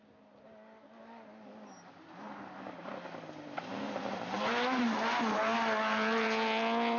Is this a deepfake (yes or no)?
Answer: no